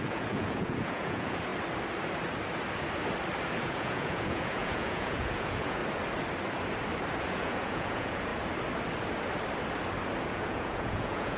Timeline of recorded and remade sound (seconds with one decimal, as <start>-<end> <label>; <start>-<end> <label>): 0.0-1.5 remade; 1.5-3.6 recorded; 3.6-5.8 remade; 5.8-7.2 recorded; 7.2-8.3 remade; 8.3-10.3 recorded; 10.3-11.4 remade